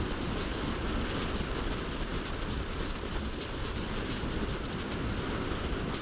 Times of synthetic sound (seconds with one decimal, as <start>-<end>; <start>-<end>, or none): 2.1-5.6